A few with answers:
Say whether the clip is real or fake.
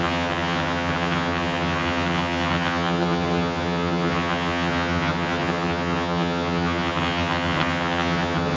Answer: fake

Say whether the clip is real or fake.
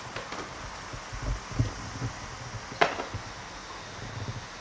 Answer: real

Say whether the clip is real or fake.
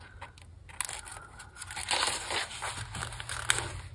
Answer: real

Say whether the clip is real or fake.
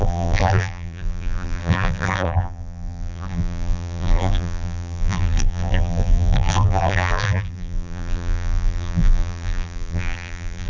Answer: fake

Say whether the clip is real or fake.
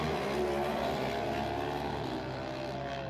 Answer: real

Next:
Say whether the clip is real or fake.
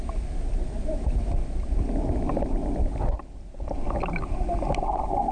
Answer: real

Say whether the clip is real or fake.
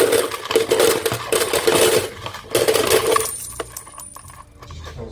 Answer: real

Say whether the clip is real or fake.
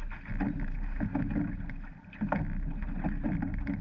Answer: real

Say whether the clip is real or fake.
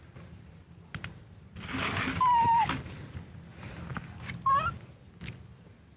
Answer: real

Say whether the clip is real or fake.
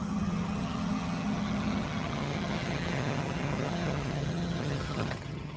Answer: fake